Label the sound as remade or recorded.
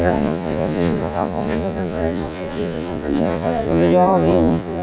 remade